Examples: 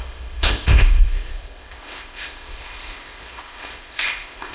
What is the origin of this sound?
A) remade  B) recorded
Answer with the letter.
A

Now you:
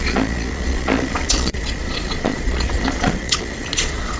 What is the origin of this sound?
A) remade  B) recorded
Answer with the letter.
A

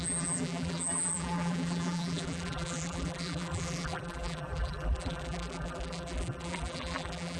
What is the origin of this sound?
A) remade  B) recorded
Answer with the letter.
A